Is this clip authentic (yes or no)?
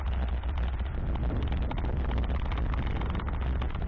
yes